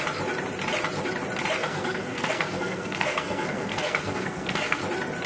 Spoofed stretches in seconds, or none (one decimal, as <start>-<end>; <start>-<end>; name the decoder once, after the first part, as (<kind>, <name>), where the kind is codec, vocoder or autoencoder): 1.6-4.8 (codec, SNAC)